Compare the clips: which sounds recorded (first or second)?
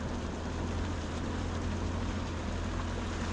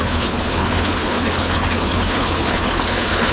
first